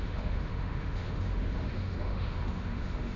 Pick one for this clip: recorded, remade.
remade